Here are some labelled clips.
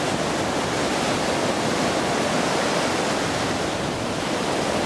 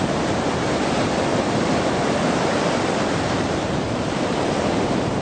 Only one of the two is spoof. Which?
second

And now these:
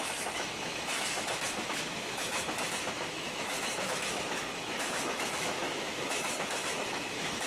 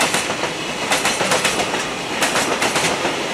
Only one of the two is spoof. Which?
first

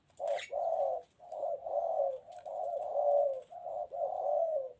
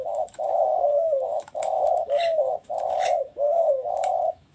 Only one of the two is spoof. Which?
second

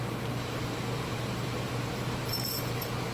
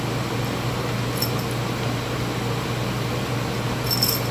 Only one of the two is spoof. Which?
first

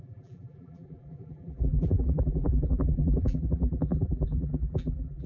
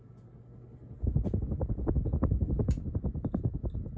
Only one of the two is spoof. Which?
first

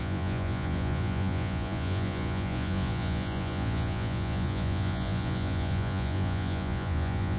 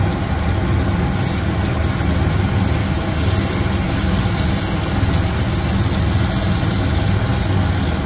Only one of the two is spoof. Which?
first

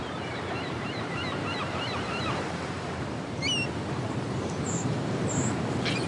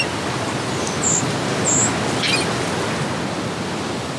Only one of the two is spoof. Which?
first